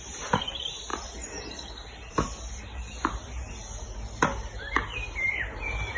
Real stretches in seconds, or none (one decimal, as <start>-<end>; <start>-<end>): 0.0-6.0